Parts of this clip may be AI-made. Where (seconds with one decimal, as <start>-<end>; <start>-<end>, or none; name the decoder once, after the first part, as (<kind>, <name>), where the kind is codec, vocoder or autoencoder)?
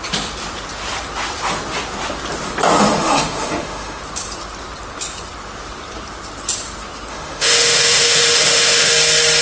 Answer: 2.8-4.0 (autoencoder, DAC-VAE); 7.1-8.9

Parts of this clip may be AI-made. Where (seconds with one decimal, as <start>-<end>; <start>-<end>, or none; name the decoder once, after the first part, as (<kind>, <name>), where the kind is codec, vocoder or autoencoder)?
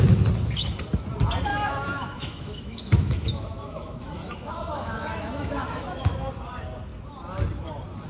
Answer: 1.5-6.3 (autoencoder, DAC-VAE)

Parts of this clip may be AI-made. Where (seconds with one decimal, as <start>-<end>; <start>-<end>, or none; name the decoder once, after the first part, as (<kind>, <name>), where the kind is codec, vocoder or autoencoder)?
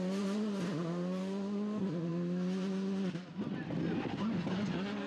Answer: none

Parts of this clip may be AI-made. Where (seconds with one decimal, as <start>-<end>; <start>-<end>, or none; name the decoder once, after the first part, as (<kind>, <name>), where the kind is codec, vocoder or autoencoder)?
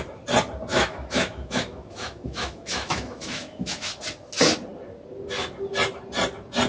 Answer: 0.7-3.9 (autoencoder, DAC-VAE)